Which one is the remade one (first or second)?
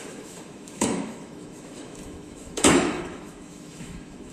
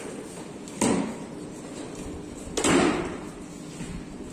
first